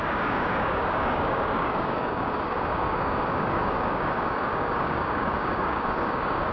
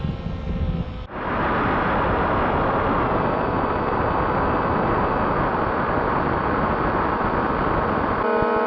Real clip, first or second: second